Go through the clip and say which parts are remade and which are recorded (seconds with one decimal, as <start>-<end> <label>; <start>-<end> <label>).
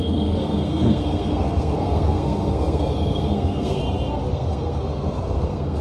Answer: 0.0-3.8 remade; 3.8-4.3 recorded; 4.3-5.8 remade